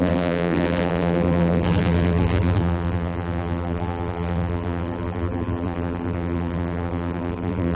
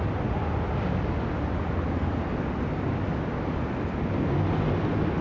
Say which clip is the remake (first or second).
first